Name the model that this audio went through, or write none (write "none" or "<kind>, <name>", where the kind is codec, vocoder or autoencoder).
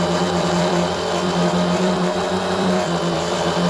vocoder, BigVGAN v2